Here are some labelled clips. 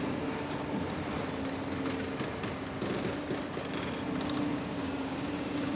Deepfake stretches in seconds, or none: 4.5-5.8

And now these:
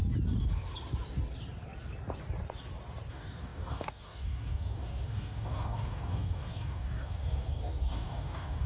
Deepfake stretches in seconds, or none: 3.1-8.7

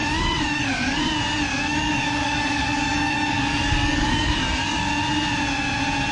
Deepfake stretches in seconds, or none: 0.0-1.0; 1.5-4.9

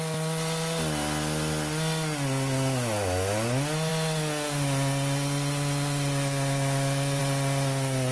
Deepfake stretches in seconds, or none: none

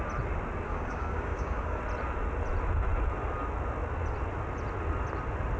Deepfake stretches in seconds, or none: 0.7-1.8

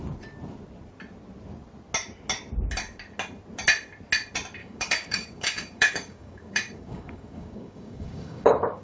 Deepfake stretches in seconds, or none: 4.6-8.8

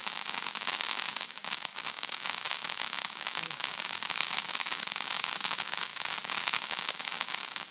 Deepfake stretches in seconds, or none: 0.0-7.7

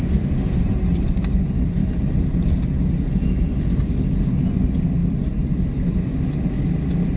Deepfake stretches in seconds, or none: none